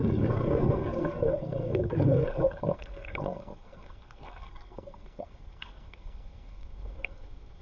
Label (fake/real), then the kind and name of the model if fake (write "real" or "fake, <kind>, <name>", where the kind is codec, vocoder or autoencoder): fake, codec, SNAC